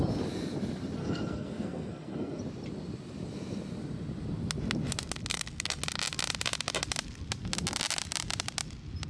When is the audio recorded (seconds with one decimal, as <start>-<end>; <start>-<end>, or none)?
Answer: 0.0-1.0; 2.4-5.3; 5.8-9.1